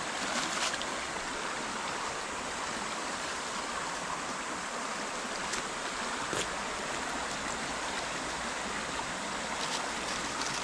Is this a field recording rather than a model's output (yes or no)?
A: yes